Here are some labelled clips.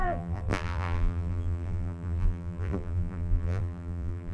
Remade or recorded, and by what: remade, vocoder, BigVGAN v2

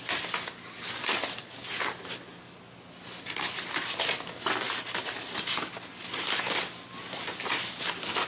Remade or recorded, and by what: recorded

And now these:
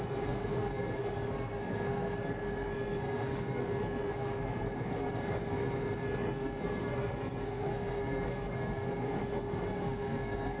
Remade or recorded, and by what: remade, codec, SNAC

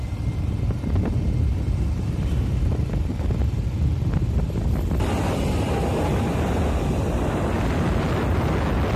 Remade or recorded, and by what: recorded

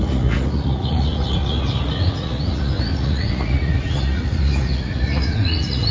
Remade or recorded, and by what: remade, vocoder, Vocos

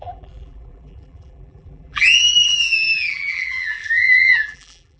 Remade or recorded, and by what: remade, vocoder, BigVGAN v2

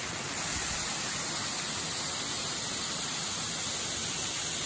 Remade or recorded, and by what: recorded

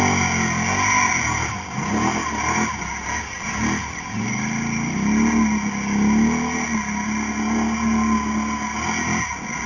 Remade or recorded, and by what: recorded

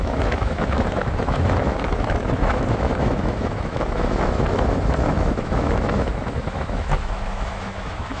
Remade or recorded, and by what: remade, autoencoder, DAC-VAE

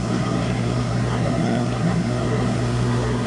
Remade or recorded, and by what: remade, codec, SNAC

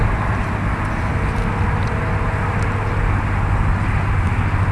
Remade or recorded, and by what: recorded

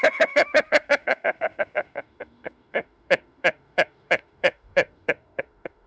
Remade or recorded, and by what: remade, autoencoder, DAC-VAE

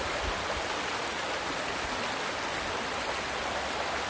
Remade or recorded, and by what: recorded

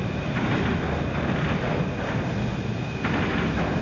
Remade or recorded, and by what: recorded